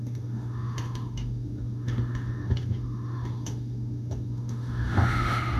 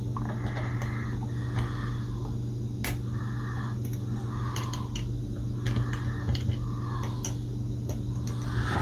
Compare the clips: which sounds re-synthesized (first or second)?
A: first